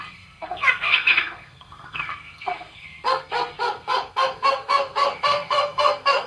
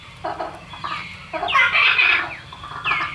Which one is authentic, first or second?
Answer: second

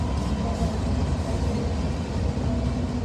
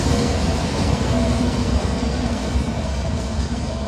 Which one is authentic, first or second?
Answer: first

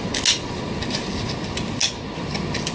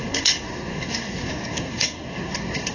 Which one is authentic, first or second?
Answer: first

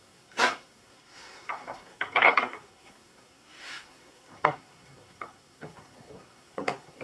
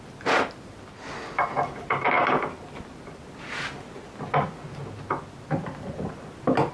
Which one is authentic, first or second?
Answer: second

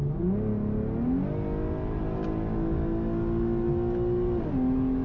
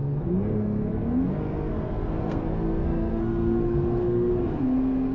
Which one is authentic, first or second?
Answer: first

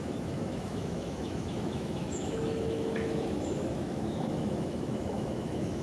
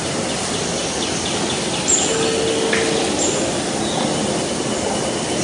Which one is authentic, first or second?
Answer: second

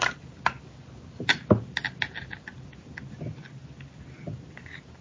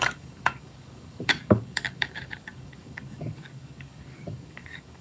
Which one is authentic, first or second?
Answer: first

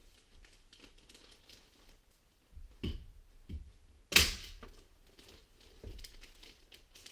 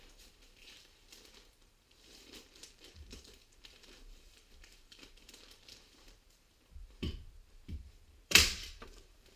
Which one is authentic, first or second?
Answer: first